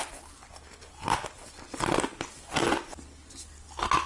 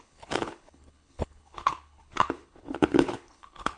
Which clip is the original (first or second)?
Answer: first